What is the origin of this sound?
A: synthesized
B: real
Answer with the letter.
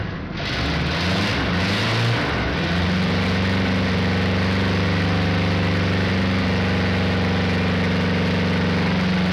B